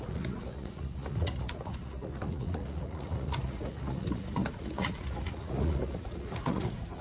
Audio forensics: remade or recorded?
remade